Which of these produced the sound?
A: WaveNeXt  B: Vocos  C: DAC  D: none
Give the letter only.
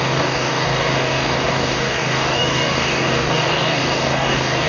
C